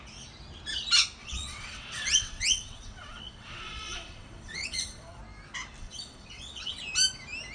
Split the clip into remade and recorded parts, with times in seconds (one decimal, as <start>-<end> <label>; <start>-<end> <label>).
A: 0.0-1.2 recorded; 1.2-5.2 remade; 5.2-5.8 recorded; 5.8-6.8 remade; 6.8-7.5 recorded